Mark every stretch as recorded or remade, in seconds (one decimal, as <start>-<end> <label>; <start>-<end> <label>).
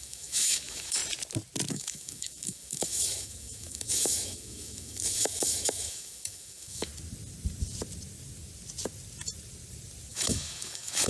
0.0-1.0 remade; 1.0-1.7 recorded; 1.7-6.9 remade; 6.9-10.1 recorded; 10.1-11.1 remade